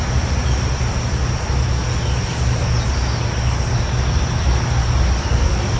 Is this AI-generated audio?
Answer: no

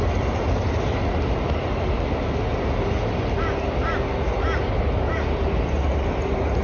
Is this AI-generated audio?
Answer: no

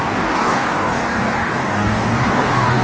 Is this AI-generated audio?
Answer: yes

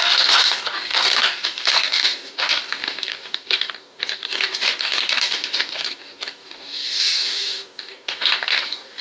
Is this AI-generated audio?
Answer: yes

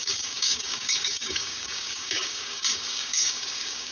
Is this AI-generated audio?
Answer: yes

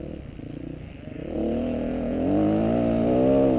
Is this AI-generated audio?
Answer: no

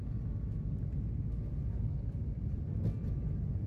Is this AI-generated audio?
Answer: no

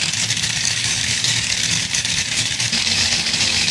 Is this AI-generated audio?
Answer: yes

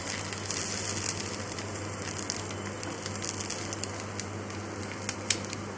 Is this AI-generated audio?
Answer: no